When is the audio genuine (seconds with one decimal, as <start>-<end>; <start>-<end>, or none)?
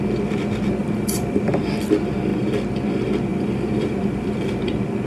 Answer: 0.0-0.8; 1.5-3.3; 4.6-5.1